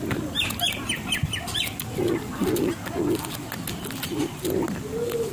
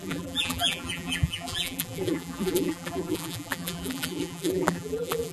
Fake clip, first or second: second